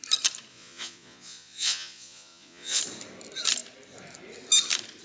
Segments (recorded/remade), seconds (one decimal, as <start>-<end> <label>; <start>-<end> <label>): 0.0-0.5 recorded; 0.5-2.8 remade; 2.8-5.0 recorded